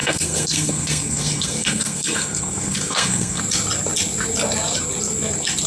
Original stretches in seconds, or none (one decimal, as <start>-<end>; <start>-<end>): 3.4-5.7